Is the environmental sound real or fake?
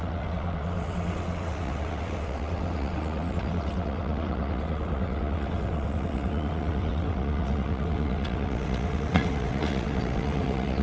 fake